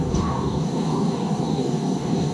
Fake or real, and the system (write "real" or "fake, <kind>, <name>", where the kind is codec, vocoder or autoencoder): fake, codec, DAC